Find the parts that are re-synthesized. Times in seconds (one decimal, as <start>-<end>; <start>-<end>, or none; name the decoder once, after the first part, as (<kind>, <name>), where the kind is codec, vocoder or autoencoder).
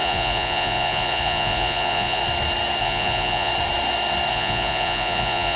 0.0-2.2 (vocoder, Vocos); 2.8-3.5; 4.3-5.6